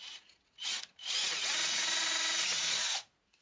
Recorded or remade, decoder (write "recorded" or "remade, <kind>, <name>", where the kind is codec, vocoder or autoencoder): remade, vocoder, Vocos